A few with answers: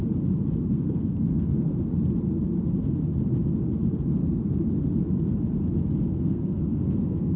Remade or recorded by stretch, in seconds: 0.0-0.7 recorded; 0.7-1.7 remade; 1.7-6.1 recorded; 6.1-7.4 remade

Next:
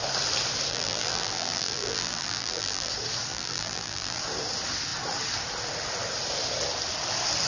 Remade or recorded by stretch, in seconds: 0.0-0.7 recorded; 0.7-2.9 remade; 2.9-3.3 recorded; 3.3-4.2 remade; 4.2-7.5 recorded